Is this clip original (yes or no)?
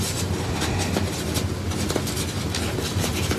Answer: yes